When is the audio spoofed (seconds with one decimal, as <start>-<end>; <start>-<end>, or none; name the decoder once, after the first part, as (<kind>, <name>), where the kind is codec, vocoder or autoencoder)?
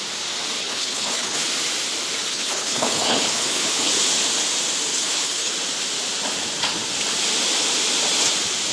0.6-1.5 (codec, HILCodec); 2.3-3.9; 4.9-5.5